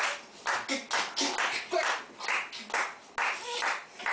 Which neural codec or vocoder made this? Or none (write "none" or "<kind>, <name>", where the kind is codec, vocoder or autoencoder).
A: none